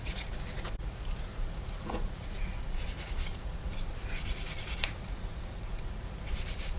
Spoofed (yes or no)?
yes